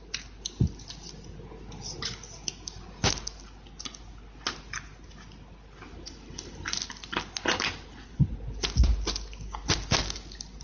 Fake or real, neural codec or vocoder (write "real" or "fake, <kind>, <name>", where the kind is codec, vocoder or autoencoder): real